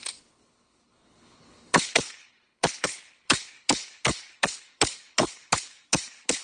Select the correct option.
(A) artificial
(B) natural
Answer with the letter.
A